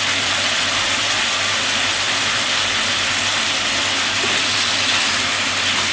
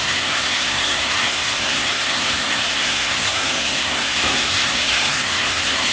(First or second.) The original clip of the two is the first